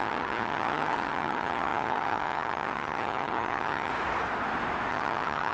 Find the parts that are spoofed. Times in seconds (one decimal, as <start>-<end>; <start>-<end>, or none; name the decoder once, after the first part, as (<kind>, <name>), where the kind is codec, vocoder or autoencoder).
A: 0.0-3.9 (vocoder, HiFi-GAN); 4.9-5.5